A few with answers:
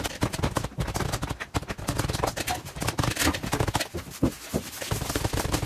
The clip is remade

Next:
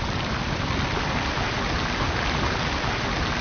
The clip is recorded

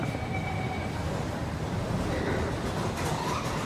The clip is remade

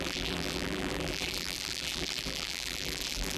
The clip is remade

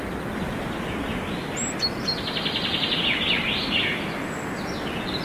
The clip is recorded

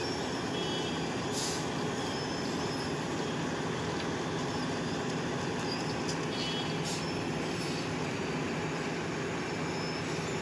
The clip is recorded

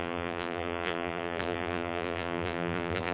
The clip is remade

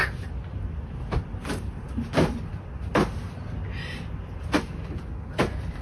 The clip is recorded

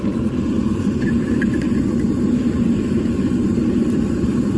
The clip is remade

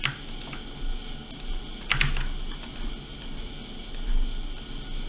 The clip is recorded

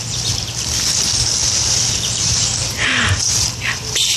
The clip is remade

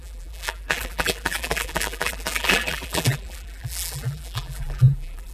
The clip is remade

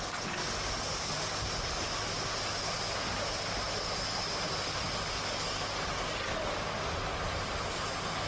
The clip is recorded